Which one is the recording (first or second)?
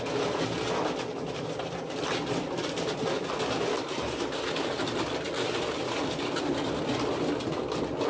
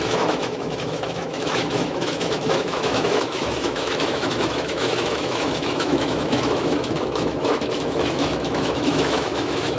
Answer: first